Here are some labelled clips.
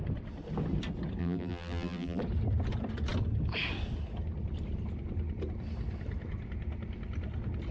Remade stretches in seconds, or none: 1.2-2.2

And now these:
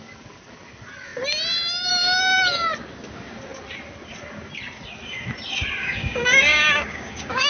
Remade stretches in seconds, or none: 5.8-7.5